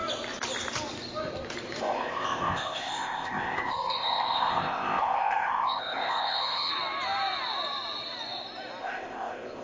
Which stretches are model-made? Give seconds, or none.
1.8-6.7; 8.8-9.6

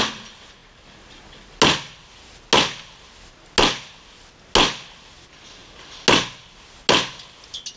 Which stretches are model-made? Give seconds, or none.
none

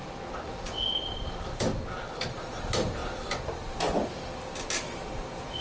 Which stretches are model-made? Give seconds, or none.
none

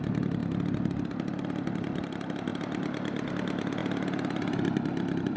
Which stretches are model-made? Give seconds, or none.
none

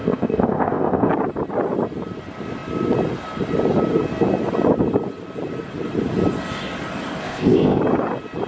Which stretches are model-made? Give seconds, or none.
0.0-1.1; 7.2-7.8

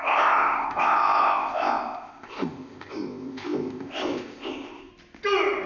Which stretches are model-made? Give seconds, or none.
0.0-4.9

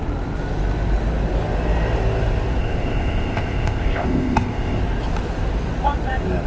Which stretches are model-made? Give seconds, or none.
2.6-4.8

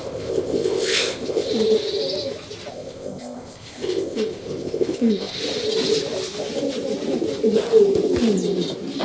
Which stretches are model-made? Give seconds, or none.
0.0-1.5; 2.7-5.4